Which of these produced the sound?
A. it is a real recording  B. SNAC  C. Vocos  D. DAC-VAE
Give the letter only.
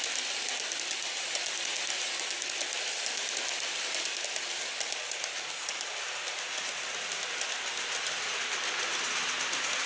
A